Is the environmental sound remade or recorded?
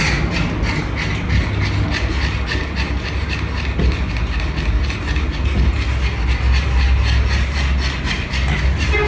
recorded